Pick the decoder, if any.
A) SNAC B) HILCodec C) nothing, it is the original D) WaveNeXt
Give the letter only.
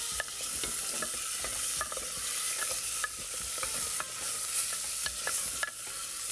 C